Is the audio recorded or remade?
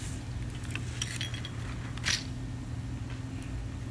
recorded